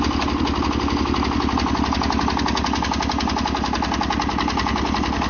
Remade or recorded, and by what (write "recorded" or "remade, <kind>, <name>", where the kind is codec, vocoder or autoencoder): recorded